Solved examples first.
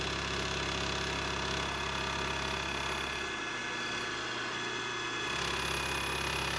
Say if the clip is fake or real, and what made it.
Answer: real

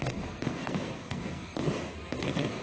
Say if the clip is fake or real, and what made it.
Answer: fake, codec, SNAC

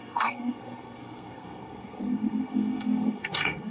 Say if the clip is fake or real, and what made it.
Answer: fake, codec, SNAC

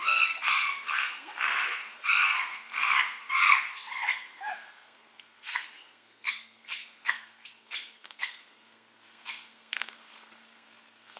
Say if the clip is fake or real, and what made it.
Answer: fake, codec, SNAC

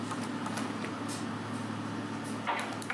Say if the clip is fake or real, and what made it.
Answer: real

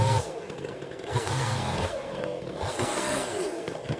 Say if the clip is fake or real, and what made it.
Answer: fake, codec, SNAC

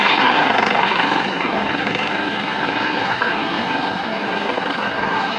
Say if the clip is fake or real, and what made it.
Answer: fake, codec, SNAC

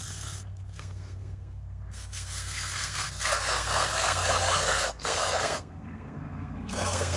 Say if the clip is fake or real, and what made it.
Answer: fake, codec, SNAC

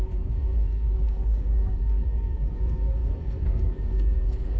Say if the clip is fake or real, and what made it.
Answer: fake, codec, SNAC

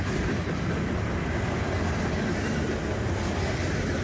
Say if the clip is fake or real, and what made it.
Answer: real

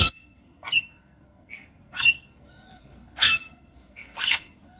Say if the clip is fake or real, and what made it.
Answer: fake, codec, SNAC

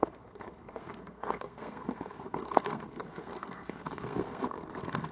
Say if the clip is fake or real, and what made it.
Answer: fake, codec, SNAC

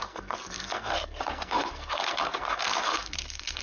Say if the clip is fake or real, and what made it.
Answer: fake, codec, SNAC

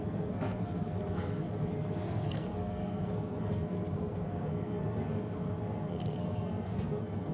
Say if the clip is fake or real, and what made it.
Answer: fake, codec, SNAC